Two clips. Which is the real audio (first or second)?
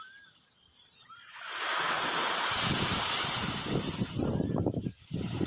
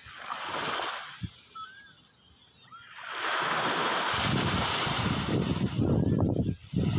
second